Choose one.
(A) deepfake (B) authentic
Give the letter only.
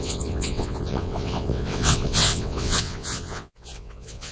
A